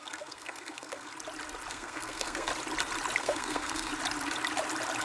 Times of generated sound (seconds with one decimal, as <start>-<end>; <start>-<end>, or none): 0.0-1.1; 1.7-2.5; 3.2-3.9